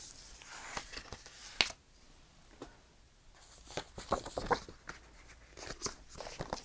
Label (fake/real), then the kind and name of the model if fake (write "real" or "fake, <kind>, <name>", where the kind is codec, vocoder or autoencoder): real